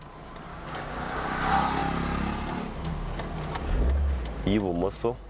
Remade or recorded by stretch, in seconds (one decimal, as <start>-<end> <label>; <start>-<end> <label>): 0.0-0.5 recorded; 0.5-1.4 remade; 1.4-5.3 recorded